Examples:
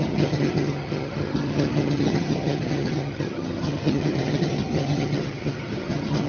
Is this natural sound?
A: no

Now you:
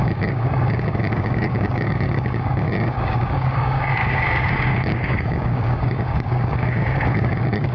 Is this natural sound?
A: no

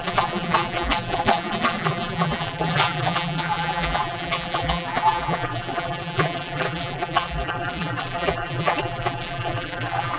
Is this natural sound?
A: no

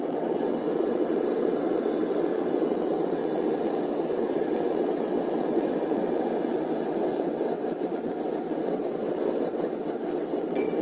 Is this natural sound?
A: no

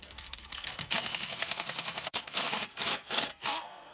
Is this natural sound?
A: no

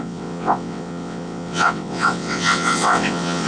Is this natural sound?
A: no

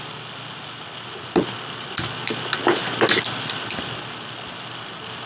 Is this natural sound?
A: yes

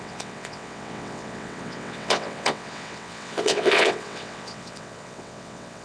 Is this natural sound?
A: no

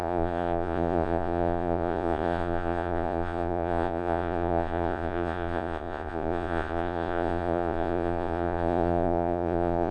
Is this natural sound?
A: no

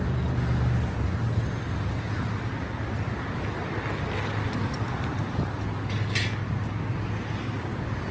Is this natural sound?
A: yes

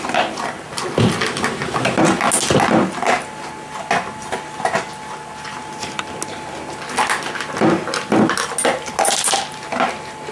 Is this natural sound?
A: yes